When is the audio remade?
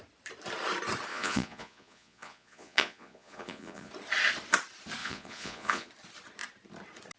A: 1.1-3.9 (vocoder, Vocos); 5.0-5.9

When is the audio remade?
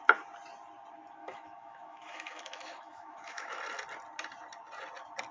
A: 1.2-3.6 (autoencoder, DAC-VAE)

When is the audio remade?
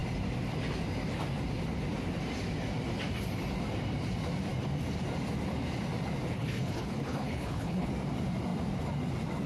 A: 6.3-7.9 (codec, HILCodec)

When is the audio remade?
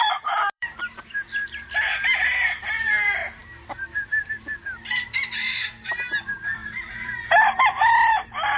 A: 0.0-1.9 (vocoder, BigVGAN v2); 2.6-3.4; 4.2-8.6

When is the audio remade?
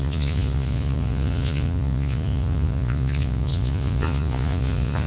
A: 0.0-5.1 (vocoder, Vocos)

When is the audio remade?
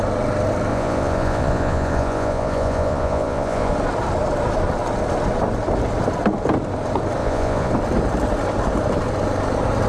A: 0.7-3.7 (vocoder, Vocos); 7.2-7.7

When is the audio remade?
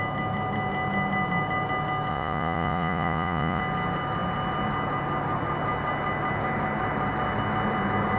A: 2.1-3.6 (vocoder, Vocos)